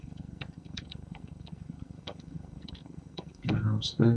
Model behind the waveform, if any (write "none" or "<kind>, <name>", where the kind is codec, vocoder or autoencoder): codec, SNAC